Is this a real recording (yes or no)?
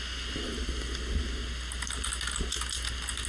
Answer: yes